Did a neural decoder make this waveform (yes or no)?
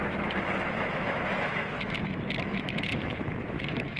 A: yes